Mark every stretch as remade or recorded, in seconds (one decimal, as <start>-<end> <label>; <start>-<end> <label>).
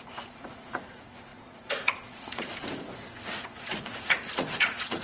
0.0-5.0 remade